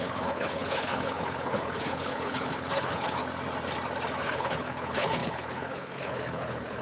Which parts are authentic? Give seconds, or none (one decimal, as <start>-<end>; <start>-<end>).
3.2-4.2